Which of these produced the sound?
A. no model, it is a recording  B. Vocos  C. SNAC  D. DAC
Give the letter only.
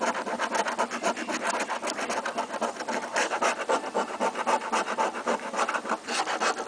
A